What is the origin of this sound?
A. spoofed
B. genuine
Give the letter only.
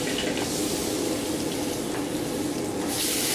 B